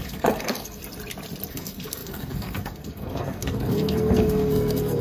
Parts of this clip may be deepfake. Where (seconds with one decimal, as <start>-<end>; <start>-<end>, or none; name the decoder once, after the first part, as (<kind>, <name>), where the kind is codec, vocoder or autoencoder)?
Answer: 0.0-0.8 (codec, SNAC); 1.5-5.0